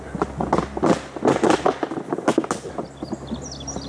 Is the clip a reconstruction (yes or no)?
no